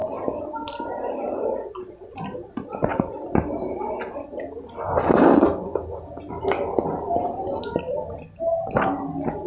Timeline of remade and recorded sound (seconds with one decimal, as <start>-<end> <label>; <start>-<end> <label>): 0.0-9.5 recorded